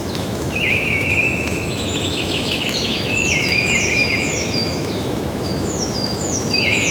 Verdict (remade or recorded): remade